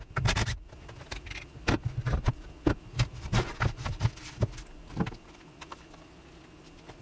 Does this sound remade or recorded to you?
recorded